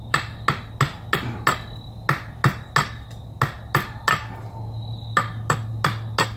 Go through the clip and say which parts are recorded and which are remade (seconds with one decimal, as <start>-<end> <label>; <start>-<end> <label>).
0.0-6.4 recorded